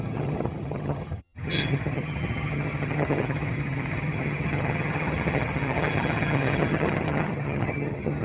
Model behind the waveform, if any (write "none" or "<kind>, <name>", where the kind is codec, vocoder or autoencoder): vocoder, HiFi-GAN